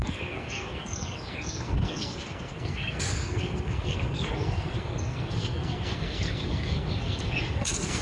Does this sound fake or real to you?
fake